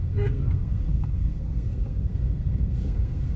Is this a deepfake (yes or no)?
yes